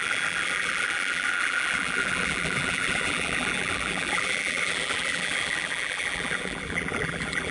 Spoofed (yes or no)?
yes